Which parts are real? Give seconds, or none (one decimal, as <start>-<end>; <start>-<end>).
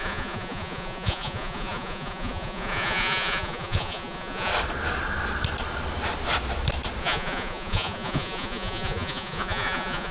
4.5-7.0